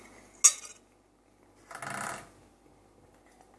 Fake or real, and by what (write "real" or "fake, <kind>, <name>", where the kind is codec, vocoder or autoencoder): real